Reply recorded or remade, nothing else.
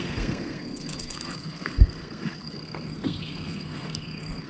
remade